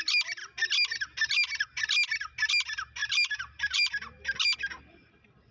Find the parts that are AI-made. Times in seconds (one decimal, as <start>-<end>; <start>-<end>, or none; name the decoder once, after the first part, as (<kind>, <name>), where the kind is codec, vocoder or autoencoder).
3.0-3.9 (vocoder, BigVGAN v2)